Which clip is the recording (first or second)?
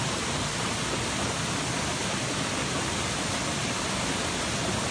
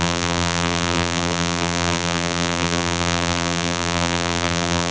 first